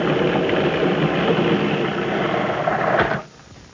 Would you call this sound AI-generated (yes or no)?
no